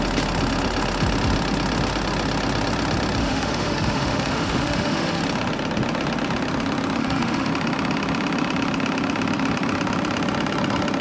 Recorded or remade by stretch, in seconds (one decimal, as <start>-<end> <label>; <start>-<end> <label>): 0.0-3.2 recorded; 3.2-5.2 remade; 5.2-7.0 recorded; 7.0-7.5 remade; 7.5-11.0 recorded